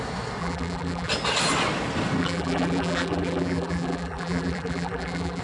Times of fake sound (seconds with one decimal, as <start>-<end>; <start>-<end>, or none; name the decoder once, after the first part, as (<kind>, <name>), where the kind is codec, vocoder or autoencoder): 0.4-1.1 (vocoder, BigVGAN v2); 2.2-5.4